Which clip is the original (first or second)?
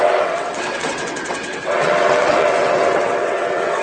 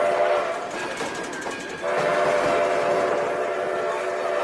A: second